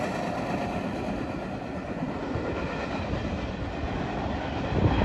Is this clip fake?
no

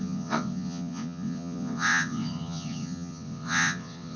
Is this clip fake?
yes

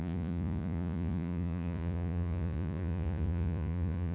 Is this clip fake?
yes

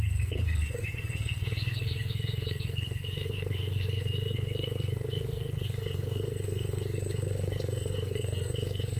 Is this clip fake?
yes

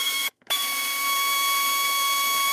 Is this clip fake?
yes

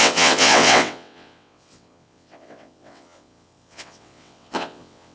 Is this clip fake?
yes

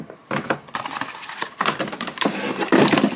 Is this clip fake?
no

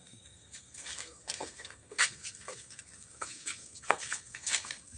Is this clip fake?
yes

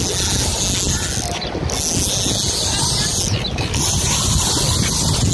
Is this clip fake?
no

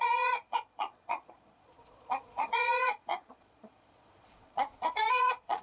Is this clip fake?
yes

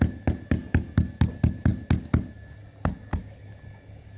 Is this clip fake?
no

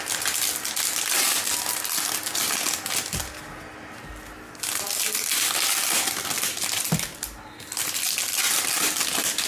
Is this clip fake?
no